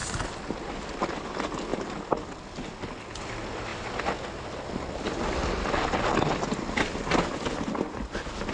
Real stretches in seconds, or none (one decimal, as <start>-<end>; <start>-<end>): 0.0-8.5